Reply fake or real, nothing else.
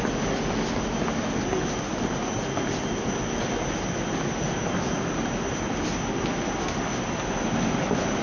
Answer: real